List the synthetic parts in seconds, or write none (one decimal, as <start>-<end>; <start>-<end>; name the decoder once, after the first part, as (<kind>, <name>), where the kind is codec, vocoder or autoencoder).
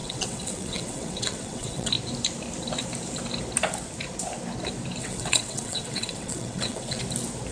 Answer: 0.0-1.9 (vocoder, WaveNeXt); 5.0-7.0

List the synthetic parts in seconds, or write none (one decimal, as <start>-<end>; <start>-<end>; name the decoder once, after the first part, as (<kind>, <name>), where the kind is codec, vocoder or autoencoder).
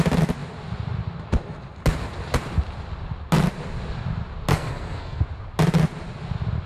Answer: 4.5-5.2 (codec, SNAC)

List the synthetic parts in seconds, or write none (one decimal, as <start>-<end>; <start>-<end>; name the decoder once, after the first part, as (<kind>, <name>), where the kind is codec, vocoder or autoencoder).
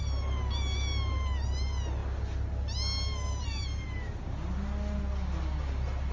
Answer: none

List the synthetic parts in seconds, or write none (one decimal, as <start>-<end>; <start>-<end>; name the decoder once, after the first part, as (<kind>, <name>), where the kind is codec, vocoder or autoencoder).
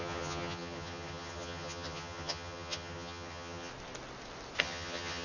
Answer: 0.0-3.7 (vocoder, HiFi-GAN); 4.6-5.2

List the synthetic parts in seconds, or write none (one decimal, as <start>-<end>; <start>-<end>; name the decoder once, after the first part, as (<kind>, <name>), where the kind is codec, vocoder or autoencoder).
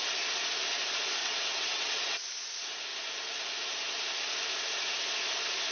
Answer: 1.2-2.2 (vocoder, WaveNeXt)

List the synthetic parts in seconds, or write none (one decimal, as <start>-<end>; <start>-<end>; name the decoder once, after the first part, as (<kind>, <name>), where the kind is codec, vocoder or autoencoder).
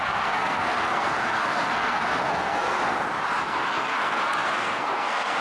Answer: 0.0-2.8 (codec, SNAC); 3.4-5.4